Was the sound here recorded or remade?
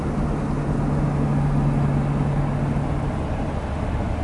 recorded